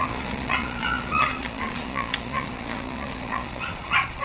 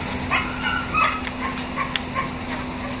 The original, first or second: second